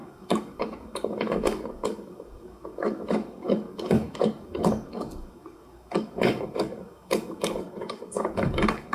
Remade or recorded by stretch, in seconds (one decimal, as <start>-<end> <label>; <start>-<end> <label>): 0.0-8.9 remade